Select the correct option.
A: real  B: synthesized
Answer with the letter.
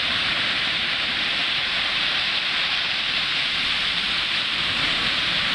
B